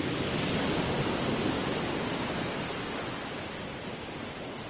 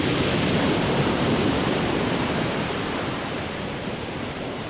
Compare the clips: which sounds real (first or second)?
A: first